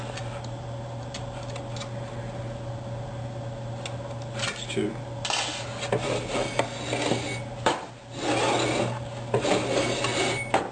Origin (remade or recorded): recorded